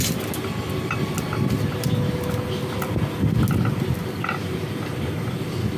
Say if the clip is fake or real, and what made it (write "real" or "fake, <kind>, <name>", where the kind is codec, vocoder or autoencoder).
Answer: real